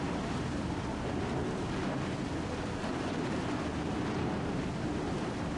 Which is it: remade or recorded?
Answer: recorded